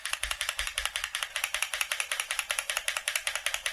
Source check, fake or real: fake